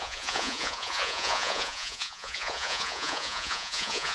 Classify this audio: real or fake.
fake